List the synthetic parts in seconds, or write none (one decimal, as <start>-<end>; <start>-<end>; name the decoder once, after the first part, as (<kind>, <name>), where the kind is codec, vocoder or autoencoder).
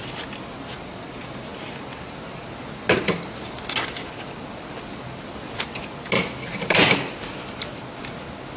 none